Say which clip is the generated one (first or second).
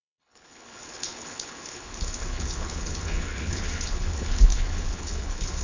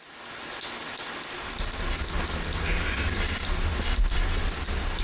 first